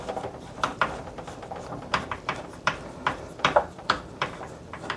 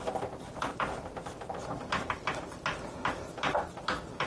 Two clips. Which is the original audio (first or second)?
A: second